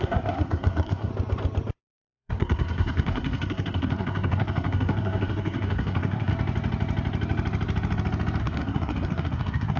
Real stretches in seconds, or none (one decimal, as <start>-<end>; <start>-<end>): 1.1-1.8; 6.3-8.4